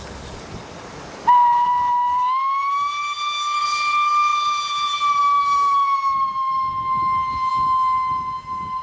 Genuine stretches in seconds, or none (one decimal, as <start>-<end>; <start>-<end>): 0.0-8.8